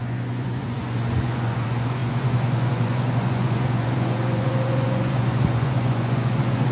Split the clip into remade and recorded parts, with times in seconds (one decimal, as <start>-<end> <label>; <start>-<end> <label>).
0.0-6.7 remade